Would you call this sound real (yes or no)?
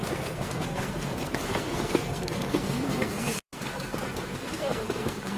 no